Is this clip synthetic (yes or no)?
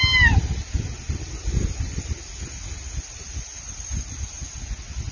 no